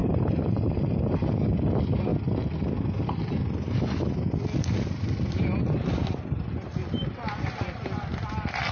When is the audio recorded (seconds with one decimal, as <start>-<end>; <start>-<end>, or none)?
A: 0.8-8.7

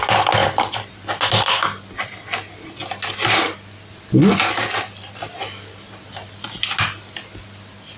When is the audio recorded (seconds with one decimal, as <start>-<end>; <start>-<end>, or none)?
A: 0.0-8.0

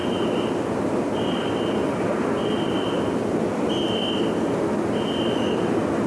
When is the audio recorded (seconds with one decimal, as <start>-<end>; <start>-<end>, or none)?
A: 0.0-6.1

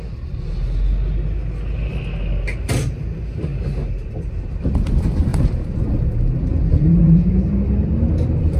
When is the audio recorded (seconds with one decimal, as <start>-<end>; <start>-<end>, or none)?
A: 0.0-5.3; 5.8-6.5; 7.3-8.6

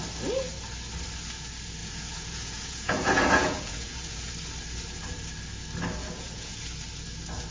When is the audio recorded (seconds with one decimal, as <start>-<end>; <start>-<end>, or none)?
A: 0.0-1.8; 4.3-6.0; 6.6-7.5

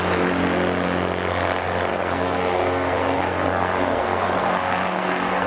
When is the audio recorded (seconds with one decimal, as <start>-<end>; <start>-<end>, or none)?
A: 0.0-1.9